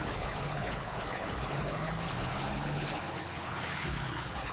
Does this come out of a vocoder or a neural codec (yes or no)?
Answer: yes